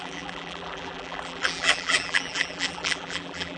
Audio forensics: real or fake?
fake